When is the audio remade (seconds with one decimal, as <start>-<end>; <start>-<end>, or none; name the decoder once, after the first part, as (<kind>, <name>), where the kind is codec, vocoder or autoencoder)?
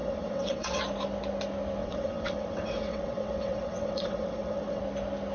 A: 0.0-0.8 (vocoder, WaveNeXt); 1.8-4.8